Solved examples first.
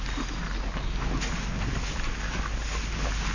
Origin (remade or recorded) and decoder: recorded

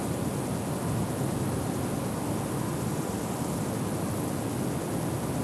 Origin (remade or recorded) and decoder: recorded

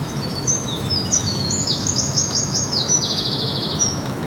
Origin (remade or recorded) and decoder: remade, autoencoder, DAC-VAE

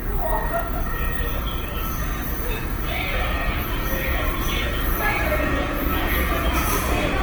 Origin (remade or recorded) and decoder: remade, vocoder, Vocos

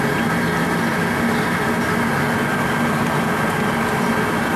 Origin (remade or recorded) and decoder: recorded